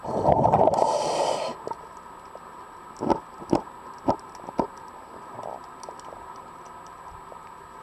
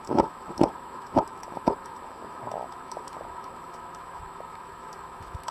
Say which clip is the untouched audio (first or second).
first